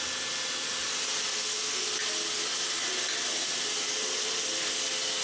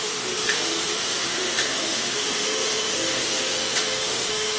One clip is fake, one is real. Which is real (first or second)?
first